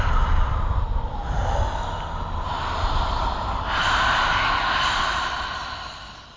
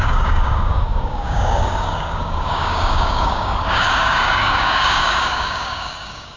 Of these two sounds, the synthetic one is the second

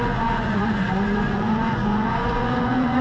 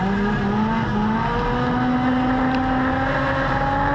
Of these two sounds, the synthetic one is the first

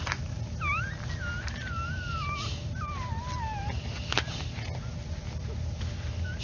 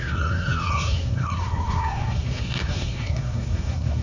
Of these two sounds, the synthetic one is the second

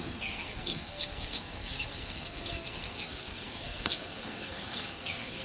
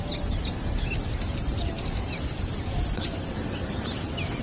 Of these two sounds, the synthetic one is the first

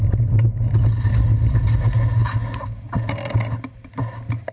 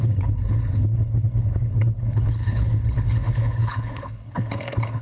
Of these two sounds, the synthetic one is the second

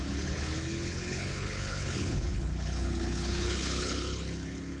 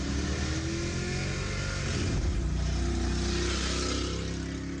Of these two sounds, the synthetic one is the first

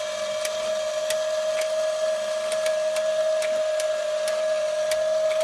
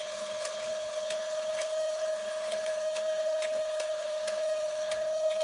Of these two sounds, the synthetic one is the second